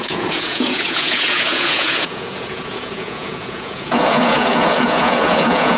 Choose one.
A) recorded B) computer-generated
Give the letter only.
B